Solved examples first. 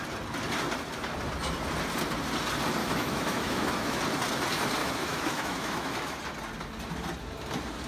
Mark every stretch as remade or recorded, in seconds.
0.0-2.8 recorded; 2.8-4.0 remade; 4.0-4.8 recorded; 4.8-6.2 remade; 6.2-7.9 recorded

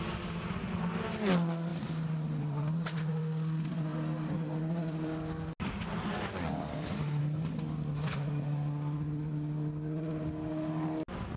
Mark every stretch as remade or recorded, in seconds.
0.0-11.4 recorded

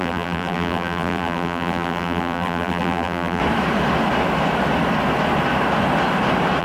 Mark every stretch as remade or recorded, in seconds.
0.0-3.4 remade; 3.4-6.6 recorded

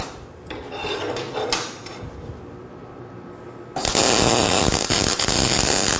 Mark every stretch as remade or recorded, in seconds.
0.0-0.8 remade; 0.8-4.4 recorded; 4.4-6.0 remade

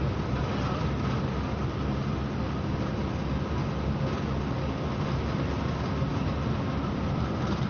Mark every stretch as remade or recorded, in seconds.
0.0-7.7 recorded